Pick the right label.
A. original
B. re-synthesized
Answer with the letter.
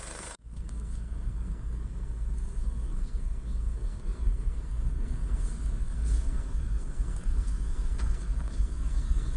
B